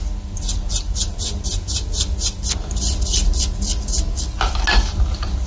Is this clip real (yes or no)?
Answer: yes